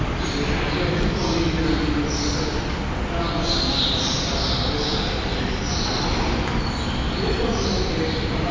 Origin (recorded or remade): recorded